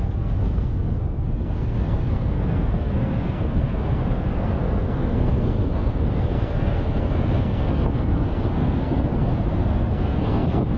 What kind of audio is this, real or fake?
fake